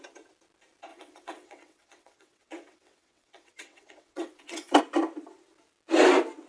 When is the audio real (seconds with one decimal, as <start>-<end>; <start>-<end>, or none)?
0.0-0.9; 4.8-6.5